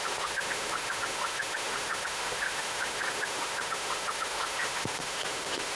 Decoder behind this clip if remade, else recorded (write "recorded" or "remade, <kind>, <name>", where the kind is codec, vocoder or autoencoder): remade, autoencoder, DAC-VAE